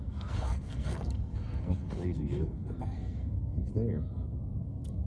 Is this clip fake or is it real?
fake